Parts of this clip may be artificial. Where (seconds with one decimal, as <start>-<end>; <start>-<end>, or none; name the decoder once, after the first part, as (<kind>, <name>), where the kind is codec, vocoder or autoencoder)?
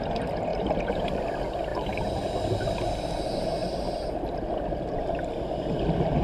0.5-1.2 (vocoder, BigVGAN v2); 1.7-2.2